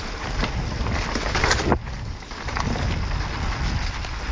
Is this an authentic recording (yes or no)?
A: yes